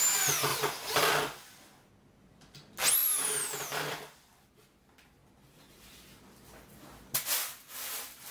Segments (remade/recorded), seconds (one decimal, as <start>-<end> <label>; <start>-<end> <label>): 0.0-0.5 recorded; 0.5-1.1 remade; 1.1-3.0 recorded; 3.0-4.0 remade; 4.0-8.3 recorded